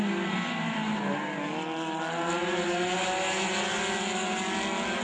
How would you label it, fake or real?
real